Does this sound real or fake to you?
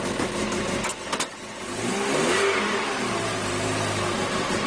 real